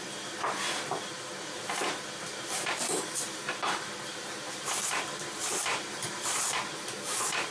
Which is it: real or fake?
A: fake